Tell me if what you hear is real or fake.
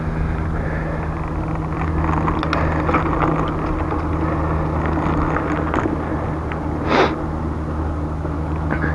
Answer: real